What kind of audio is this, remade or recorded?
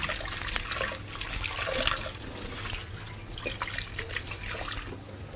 recorded